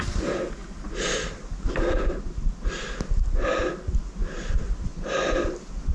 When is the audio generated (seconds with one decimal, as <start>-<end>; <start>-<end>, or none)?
0.6-1.3; 4.2-5.9